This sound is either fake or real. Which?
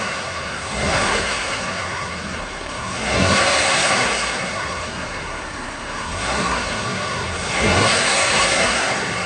fake